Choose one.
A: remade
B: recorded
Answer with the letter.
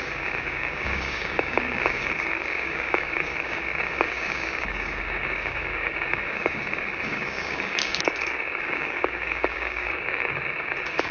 A